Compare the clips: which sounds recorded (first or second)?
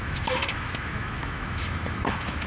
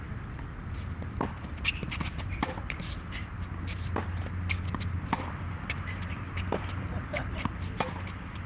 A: second